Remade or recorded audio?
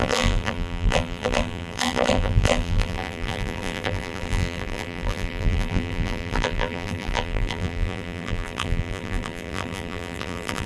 remade